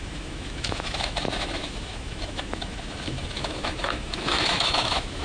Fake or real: fake